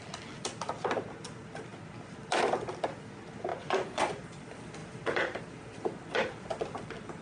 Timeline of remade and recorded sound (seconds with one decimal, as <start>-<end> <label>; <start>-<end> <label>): 0.0-3.5 recorded; 3.5-4.1 remade; 4.1-7.2 recorded

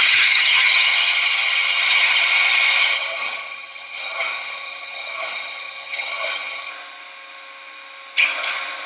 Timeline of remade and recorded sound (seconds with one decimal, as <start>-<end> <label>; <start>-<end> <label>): 0.0-6.7 remade; 6.7-8.9 recorded

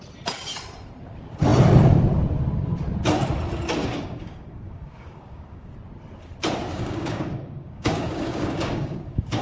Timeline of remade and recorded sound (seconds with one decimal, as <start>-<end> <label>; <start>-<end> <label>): 0.0-3.8 recorded; 3.8-5.7 remade; 5.7-6.7 recorded; 6.7-9.4 remade

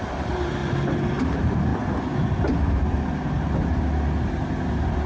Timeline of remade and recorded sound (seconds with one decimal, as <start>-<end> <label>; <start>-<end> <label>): 0.0-0.6 remade; 0.6-1.2 recorded; 1.2-1.7 remade; 1.7-5.1 recorded

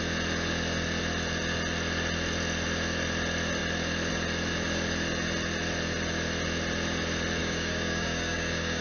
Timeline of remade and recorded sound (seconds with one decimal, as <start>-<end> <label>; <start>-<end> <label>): 0.0-7.4 recorded; 7.4-8.8 remade

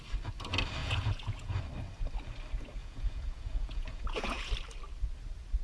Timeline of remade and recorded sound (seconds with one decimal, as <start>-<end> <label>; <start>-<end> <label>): 0.0-0.8 recorded; 0.8-1.6 remade; 1.6-2.8 recorded; 2.8-4.5 remade; 4.5-5.6 recorded

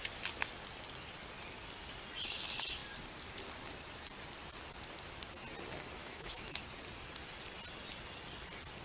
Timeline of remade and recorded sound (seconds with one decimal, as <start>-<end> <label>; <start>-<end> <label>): 0.0-6.0 recorded; 6.0-6.6 remade; 6.6-8.8 recorded

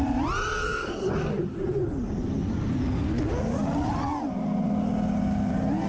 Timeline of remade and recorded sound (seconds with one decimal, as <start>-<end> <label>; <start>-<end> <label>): 0.0-0.5 recorded; 0.5-1.1 remade; 1.1-5.9 recorded